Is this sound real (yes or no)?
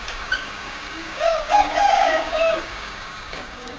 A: no